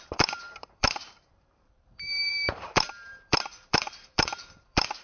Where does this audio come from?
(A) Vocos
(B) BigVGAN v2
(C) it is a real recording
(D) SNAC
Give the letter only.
B